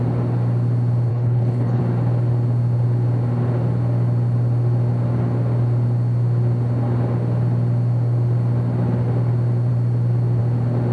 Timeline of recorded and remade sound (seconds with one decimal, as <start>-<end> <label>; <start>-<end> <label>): 0.0-1.1 recorded; 1.1-1.8 remade; 1.8-10.9 recorded